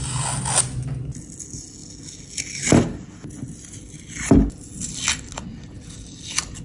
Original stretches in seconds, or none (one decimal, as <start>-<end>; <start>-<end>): 0.0-6.6